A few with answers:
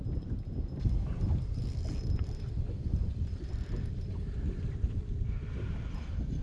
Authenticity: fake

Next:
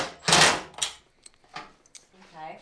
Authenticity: real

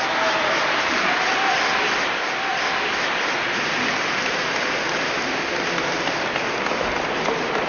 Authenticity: real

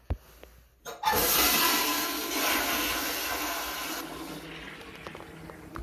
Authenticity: real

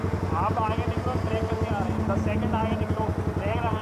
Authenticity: real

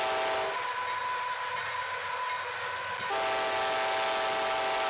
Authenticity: real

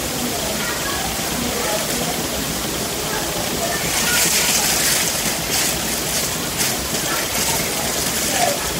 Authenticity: fake